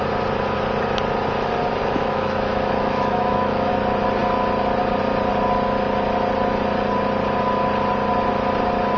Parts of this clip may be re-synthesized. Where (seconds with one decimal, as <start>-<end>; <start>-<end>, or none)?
1.8-3.7